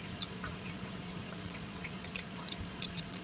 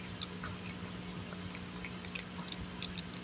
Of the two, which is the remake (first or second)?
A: first